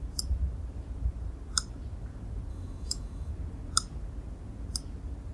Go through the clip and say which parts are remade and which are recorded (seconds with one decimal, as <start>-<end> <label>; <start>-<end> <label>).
0.0-2.5 recorded; 2.5-3.3 remade; 3.3-5.3 recorded